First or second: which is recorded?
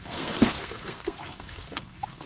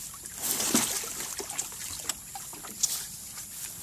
second